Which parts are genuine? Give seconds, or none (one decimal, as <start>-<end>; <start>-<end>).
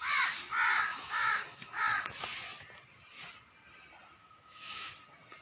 0.0-0.9; 1.9-4.2; 4.9-5.4